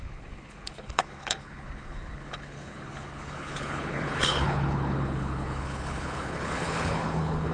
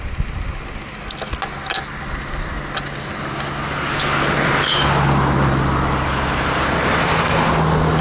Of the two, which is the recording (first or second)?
second